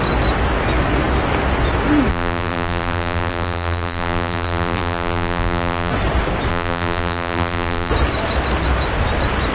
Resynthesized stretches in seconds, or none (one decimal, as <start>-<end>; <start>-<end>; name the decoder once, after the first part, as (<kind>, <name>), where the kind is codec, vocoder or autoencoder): 2.1-5.9 (vocoder, BigVGAN v2); 6.5-7.9